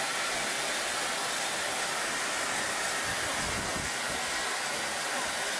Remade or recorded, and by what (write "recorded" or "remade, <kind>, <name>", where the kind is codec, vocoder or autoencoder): recorded